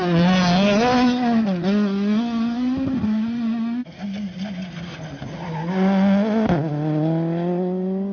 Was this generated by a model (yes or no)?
no